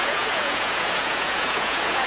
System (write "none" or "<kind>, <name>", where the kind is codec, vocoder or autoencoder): vocoder, Vocos